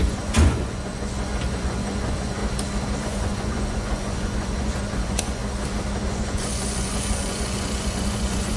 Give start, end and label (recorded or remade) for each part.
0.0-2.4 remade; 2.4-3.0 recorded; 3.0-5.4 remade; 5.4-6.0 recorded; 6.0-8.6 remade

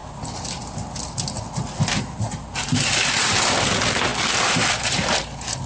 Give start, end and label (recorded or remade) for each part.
0.0-5.7 recorded